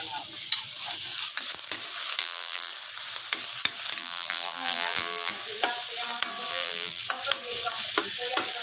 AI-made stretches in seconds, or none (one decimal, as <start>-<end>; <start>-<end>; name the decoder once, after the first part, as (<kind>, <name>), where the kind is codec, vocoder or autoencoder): 2.2-2.7 (vocoder, BigVGAN v2); 4.0-5.3; 6.5-7.0